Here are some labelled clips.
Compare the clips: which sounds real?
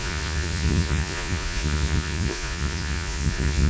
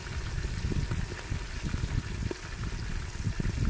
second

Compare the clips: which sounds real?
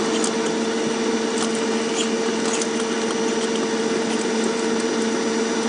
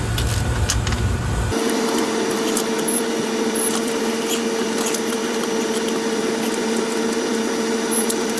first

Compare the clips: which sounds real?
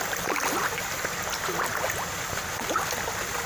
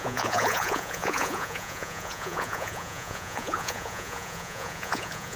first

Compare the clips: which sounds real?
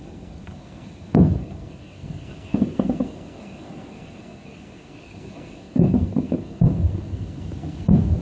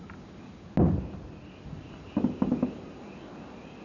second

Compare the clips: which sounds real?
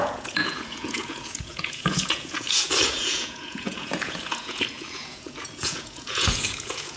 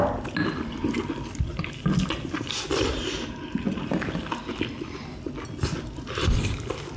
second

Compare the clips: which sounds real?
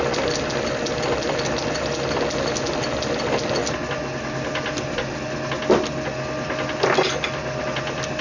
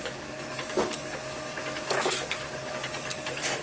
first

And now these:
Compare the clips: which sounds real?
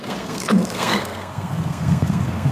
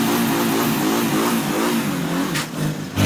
second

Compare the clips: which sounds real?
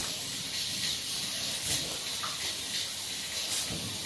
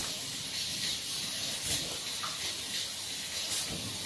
second